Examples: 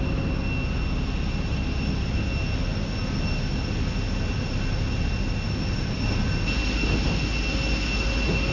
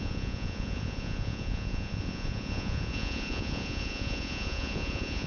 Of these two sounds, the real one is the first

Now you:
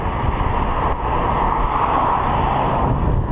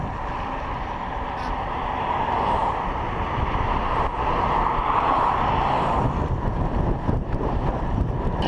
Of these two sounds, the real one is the first